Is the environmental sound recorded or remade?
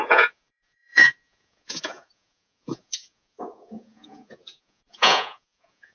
remade